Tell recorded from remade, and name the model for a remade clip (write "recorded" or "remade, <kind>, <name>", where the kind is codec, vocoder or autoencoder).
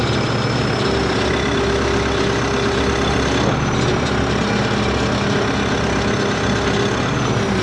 recorded